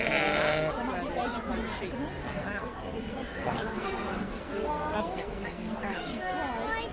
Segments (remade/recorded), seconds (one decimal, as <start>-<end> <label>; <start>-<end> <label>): 0.0-2.2 recorded; 2.2-6.3 remade; 6.3-6.9 recorded